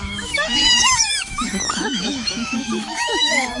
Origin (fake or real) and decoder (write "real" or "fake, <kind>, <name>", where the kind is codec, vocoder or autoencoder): fake, autoencoder, DAC-VAE